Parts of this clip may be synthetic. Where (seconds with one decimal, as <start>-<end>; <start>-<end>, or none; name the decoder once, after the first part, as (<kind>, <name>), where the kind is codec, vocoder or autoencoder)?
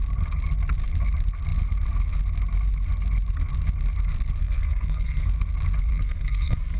4.4-5.2 (codec, SNAC); 5.9-6.8